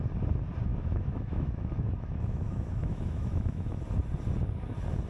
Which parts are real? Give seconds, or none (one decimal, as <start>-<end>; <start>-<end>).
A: 0.0-0.7; 3.8-5.1